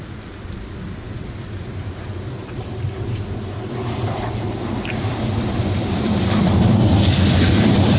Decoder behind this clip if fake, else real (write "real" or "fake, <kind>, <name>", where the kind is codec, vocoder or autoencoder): real